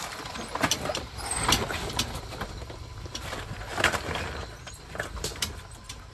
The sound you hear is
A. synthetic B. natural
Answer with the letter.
A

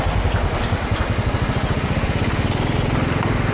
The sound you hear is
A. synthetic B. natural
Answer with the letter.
B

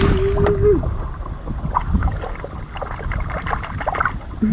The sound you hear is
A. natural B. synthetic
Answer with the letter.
A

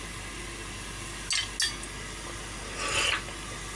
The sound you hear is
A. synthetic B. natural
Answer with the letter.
B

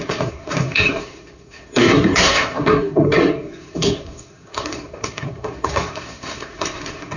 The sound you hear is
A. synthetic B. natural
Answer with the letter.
A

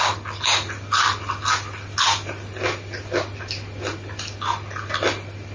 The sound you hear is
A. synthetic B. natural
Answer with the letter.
B